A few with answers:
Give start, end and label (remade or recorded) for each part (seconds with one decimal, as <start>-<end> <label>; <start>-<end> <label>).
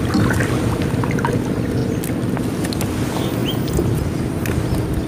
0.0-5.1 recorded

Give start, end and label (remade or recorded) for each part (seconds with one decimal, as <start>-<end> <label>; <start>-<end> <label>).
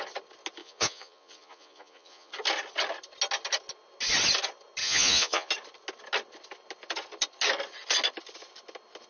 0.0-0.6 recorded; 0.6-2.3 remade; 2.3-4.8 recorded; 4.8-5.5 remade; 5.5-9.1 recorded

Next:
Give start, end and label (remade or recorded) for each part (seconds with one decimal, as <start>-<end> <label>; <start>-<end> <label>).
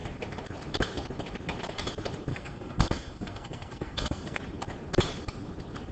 0.0-2.3 recorded; 2.3-4.4 remade; 4.4-5.9 recorded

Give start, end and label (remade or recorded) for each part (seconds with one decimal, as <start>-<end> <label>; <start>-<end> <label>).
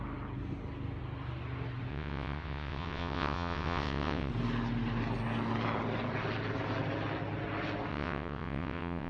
0.0-1.9 recorded; 1.9-4.3 remade; 4.3-7.9 recorded; 7.9-9.1 remade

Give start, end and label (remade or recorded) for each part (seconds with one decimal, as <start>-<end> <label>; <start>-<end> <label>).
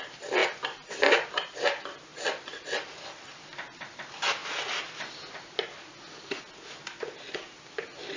0.0-2.1 recorded; 2.1-3.4 remade; 3.4-8.2 recorded